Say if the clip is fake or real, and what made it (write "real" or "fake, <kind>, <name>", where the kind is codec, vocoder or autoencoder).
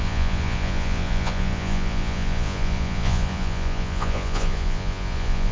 fake, vocoder, Vocos